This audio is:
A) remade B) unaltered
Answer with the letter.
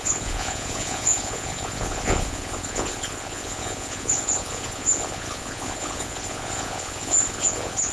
A